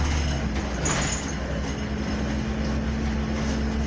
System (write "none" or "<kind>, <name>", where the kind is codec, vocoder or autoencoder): none